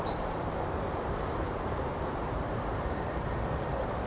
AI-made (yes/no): yes